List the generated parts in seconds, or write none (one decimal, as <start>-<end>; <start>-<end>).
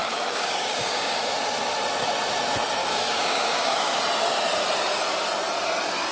0.0-1.2; 2.8-4.0